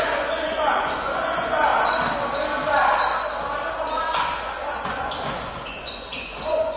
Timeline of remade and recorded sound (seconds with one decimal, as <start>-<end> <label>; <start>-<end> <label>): 0.0-1.7 remade; 1.7-4.0 recorded; 4.0-6.8 remade